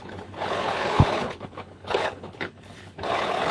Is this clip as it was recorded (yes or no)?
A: no